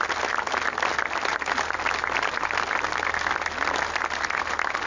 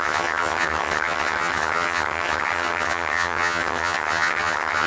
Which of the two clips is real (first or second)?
first